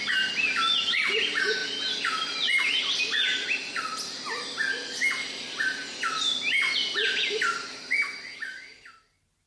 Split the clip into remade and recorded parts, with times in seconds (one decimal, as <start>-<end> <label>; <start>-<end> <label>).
0.0-1.6 recorded; 1.6-3.0 remade; 3.0-9.5 recorded